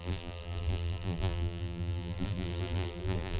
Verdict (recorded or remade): remade